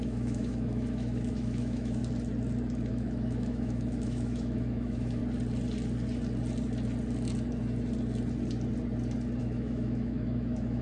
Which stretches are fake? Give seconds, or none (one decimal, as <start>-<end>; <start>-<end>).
0.0-2.0; 2.9-5.2; 9.4-10.8